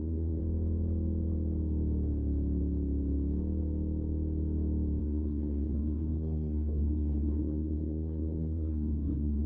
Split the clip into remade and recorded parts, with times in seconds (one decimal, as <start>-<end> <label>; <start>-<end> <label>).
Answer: 0.0-0.4 remade; 0.4-5.0 recorded; 5.0-9.5 remade